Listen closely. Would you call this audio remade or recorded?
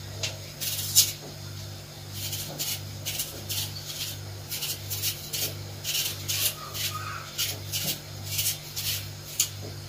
remade